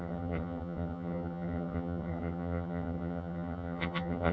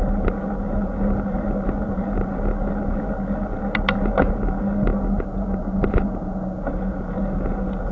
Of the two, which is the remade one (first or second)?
first